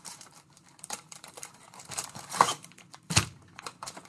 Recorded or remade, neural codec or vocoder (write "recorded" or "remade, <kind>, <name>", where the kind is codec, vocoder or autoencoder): remade, vocoder, BigVGAN v2